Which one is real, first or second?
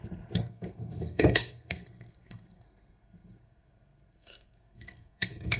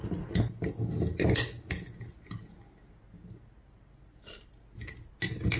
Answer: second